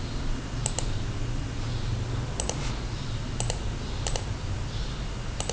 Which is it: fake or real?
real